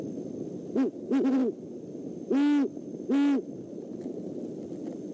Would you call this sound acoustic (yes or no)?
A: yes